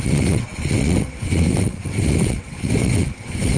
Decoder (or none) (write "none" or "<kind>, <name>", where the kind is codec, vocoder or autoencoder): vocoder, WaveNeXt